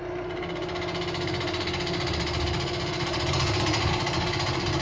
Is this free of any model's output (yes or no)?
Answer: yes